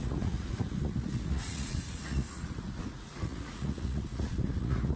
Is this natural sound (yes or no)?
no